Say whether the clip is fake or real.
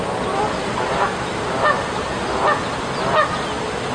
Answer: real